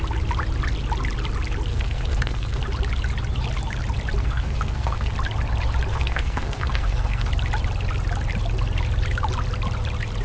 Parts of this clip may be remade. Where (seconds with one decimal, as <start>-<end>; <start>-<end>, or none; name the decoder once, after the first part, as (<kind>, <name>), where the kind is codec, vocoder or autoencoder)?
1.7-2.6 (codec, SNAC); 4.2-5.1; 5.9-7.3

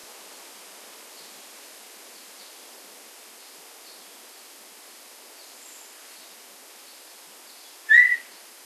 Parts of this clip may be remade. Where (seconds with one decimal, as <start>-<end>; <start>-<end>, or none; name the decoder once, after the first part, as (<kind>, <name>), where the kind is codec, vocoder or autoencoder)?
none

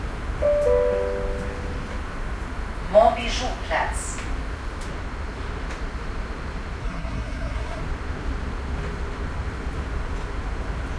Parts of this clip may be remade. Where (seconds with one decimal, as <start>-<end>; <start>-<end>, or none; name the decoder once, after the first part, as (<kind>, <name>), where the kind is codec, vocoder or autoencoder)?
6.8-7.8 (codec, SNAC)